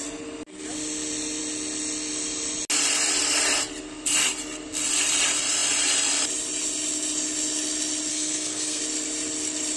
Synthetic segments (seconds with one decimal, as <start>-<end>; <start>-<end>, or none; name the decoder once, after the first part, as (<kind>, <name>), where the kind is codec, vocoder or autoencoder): 8.1-8.8 (codec, SNAC)